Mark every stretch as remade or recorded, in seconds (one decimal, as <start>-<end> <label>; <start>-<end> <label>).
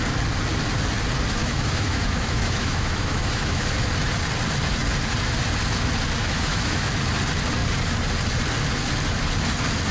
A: 0.0-1.4 recorded; 1.4-3.8 remade; 3.8-6.2 recorded; 6.2-6.9 remade; 6.9-9.9 recorded